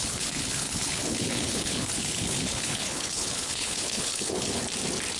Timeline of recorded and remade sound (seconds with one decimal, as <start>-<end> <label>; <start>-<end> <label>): 0.0-4.6 remade; 4.6-5.2 recorded